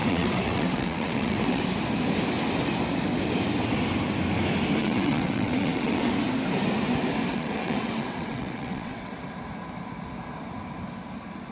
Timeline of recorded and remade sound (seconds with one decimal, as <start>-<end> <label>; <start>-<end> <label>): 0.0-1.6 remade; 1.6-4.8 recorded; 4.8-6.1 remade; 6.1-7.3 recorded; 7.3-9.1 remade; 9.1-11.5 recorded